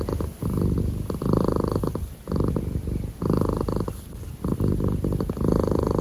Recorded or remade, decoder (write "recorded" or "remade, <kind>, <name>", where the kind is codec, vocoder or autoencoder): recorded